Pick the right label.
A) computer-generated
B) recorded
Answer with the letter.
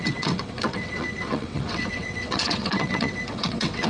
A